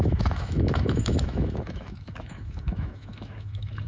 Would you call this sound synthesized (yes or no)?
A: yes